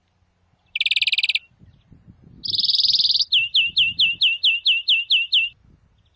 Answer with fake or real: real